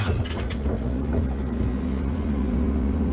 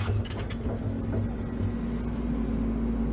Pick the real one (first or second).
second